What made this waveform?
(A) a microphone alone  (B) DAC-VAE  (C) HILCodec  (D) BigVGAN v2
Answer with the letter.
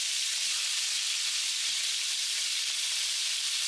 D